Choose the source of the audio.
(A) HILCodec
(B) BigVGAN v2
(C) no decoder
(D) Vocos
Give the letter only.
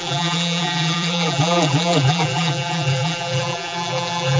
B